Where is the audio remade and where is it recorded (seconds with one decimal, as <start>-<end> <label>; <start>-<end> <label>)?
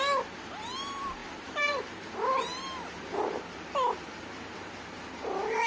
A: 0.0-1.2 recorded; 1.2-1.9 remade; 1.9-5.7 recorded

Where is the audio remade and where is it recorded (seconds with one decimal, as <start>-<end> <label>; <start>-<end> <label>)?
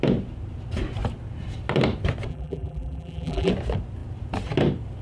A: 0.0-2.3 recorded; 2.3-3.5 remade; 3.5-5.0 recorded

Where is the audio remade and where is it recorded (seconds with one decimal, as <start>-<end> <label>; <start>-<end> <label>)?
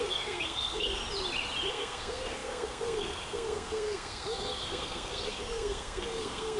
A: 0.0-1.0 remade; 1.0-1.7 recorded; 1.7-6.6 remade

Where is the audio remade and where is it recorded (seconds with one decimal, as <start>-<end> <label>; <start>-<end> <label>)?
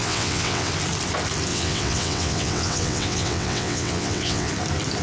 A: 0.0-0.7 remade; 0.7-1.5 recorded; 1.5-4.5 remade; 4.5-5.0 recorded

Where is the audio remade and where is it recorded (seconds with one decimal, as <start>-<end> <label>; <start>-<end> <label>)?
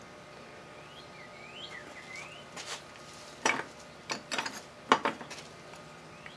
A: 0.0-6.4 recorded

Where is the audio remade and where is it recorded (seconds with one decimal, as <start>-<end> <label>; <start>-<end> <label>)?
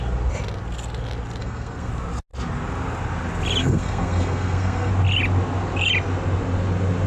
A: 0.0-1.4 recorded; 1.4-1.9 remade; 1.9-3.6 recorded; 3.6-4.9 remade; 4.9-7.1 recorded